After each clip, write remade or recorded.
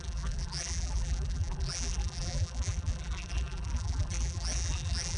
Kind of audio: remade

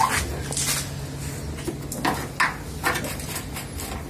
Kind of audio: recorded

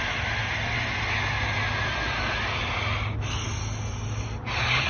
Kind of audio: recorded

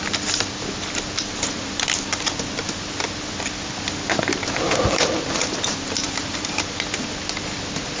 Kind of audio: recorded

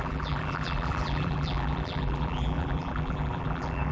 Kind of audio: remade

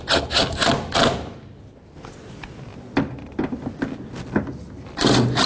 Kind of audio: recorded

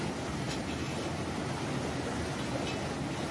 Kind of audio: recorded